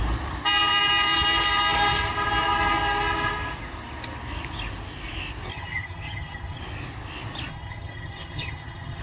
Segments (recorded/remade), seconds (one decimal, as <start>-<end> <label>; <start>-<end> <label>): 0.0-5.5 recorded; 5.5-6.6 remade; 6.6-7.5 recorded; 7.5-9.0 remade

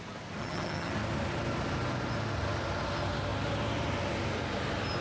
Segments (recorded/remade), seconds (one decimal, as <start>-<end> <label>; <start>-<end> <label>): 0.0-0.4 recorded; 0.4-0.9 remade; 0.9-5.0 recorded

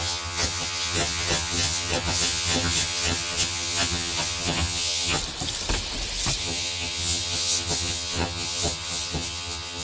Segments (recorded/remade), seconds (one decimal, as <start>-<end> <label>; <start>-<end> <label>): 0.0-5.2 remade; 5.2-6.4 recorded; 6.4-9.8 remade

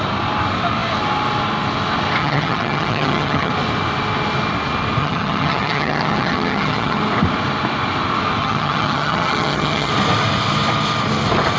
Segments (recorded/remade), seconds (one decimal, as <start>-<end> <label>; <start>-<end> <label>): 0.0-2.2 recorded; 2.2-3.5 remade; 3.5-5.0 recorded; 5.0-7.0 remade; 7.0-8.4 recorded; 8.4-9.9 remade; 9.9-11.6 recorded

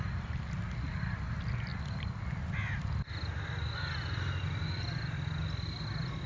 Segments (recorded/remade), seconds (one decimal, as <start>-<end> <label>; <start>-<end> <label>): 0.0-6.3 recorded

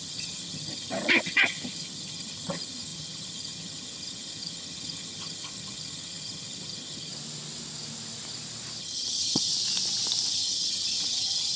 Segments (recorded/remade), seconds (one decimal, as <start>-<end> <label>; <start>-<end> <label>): 0.0-7.1 remade; 7.1-8.8 recorded; 8.8-9.5 remade; 9.5-10.3 recorded; 10.3-11.6 remade

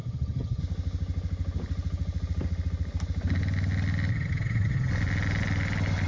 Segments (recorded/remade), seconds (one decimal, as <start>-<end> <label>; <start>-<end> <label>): 0.0-0.6 remade; 0.6-4.1 recorded; 4.1-4.9 remade; 4.9-6.1 recorded

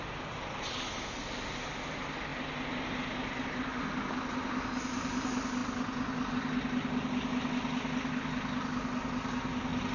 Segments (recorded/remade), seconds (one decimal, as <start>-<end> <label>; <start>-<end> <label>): 0.0-9.9 recorded